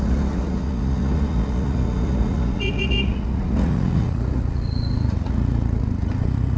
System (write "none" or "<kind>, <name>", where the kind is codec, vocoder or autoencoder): vocoder, Vocos